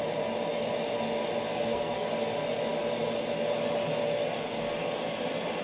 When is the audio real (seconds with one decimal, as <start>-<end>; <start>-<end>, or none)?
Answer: 0.0-1.5; 2.1-5.6